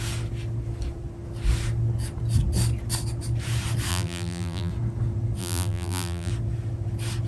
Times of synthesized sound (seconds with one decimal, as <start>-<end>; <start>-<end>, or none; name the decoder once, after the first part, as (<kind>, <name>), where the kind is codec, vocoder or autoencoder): 3.9-4.7 (vocoder, BigVGAN v2); 5.4-6.3